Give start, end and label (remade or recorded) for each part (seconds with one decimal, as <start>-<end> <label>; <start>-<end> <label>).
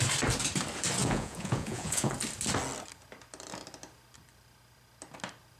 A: 0.0-1.0 recorded; 1.0-2.1 remade; 2.1-5.6 recorded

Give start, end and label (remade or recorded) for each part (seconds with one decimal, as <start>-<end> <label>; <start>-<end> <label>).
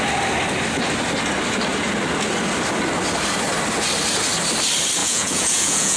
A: 0.0-5.0 recorded; 5.0-6.0 remade